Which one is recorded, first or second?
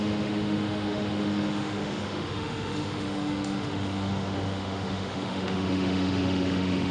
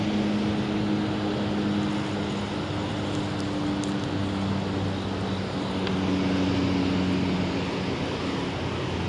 second